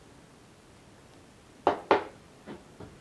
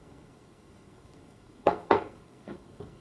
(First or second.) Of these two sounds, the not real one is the second